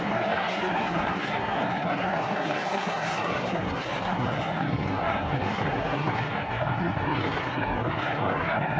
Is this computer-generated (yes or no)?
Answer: yes